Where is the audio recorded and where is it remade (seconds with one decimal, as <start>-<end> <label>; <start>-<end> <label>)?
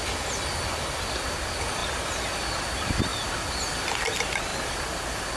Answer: 0.0-5.4 remade